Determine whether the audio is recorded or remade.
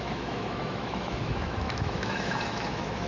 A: remade